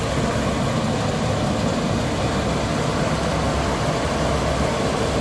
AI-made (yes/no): no